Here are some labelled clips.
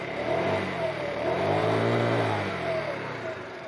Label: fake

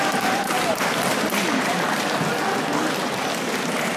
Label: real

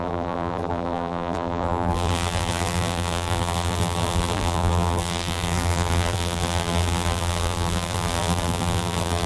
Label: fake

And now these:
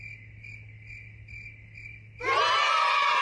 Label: real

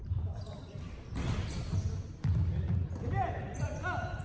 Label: real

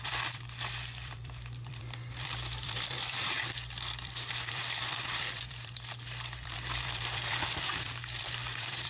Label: fake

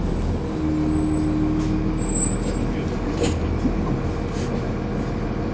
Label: real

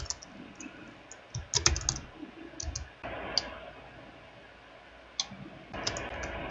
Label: real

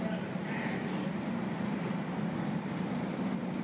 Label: real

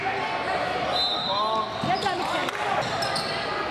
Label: real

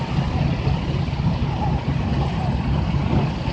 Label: real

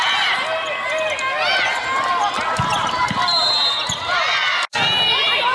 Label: real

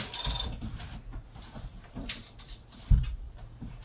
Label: fake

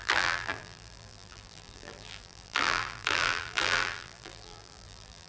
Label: fake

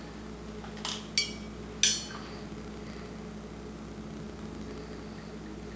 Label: real